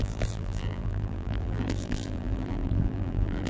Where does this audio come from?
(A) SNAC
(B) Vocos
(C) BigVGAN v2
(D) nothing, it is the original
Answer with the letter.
C